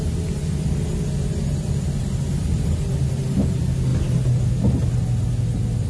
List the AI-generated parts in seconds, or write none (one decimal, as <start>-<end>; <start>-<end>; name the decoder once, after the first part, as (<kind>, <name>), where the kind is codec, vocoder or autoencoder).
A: none